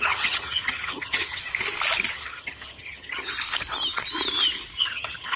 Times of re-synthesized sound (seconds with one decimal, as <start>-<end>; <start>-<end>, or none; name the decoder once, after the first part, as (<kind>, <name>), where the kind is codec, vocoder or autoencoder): 0.0-1.4 (vocoder, HiFi-GAN); 2.1-3.3; 4.8-5.4